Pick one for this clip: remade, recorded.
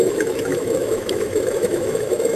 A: remade